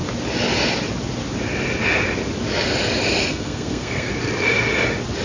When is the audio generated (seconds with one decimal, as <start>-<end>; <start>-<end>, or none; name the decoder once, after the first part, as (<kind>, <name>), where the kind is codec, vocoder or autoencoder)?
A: 3.3-4.1 (codec, SNAC)